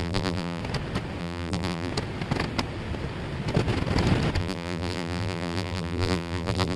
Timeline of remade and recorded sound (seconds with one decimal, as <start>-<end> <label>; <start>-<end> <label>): 0.0-0.6 remade; 0.6-1.2 recorded; 1.2-1.9 remade; 1.9-4.4 recorded; 4.4-6.8 remade